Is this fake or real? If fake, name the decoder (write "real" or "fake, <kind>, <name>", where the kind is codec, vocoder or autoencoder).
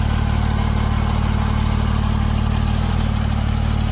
real